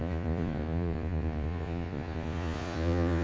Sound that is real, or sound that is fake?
fake